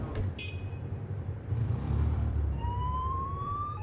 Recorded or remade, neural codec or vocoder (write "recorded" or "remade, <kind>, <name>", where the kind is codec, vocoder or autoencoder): remade, vocoder, BigVGAN v2